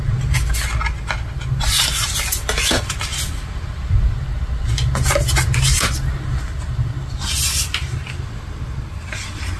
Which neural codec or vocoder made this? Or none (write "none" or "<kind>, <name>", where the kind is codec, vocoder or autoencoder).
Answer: none